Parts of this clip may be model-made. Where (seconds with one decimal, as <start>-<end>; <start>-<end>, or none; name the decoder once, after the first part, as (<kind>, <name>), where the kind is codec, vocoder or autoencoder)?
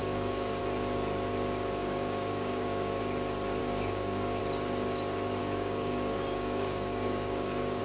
0.0-0.6 (codec, DAC); 1.8-3.0; 3.6-4.4; 5.4-7.8